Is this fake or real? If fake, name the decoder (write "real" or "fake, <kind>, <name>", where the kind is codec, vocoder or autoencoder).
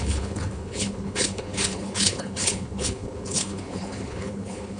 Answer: fake, codec, HILCodec